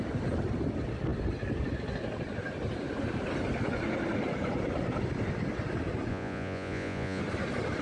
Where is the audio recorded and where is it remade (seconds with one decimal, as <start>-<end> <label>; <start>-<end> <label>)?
0.0-6.1 recorded; 6.1-7.2 remade; 7.2-7.8 recorded